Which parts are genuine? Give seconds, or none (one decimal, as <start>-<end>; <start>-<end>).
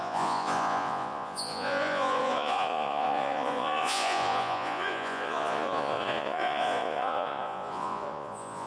none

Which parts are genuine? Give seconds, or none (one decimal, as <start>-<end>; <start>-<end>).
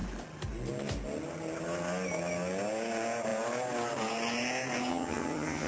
0.0-4.9